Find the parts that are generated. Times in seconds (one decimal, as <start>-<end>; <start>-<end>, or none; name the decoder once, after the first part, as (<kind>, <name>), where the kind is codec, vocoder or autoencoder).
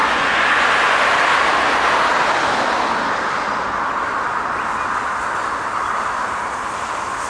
0.0-1.0 (vocoder, Vocos)